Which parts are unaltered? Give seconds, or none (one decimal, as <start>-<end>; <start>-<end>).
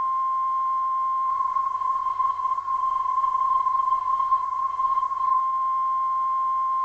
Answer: 0.0-1.3; 5.4-6.8